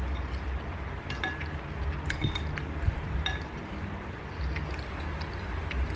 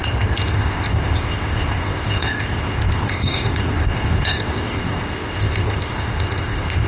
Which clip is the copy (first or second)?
second